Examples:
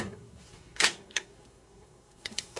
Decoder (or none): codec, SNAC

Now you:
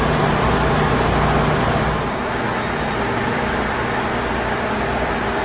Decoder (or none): none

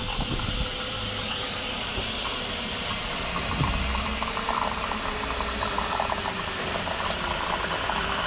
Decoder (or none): vocoder, BigVGAN v2